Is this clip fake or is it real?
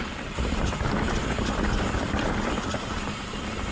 real